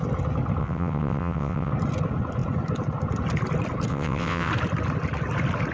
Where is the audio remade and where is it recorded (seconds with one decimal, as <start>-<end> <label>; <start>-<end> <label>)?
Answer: 0.0-0.6 recorded; 0.6-1.7 remade; 1.7-3.9 recorded; 3.9-4.5 remade; 4.5-5.7 recorded